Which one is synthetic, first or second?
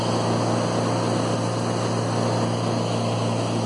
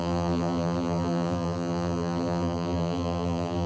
second